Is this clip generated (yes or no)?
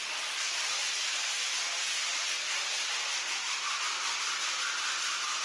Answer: no